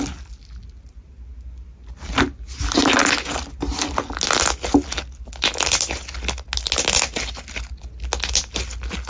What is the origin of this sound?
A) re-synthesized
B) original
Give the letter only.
B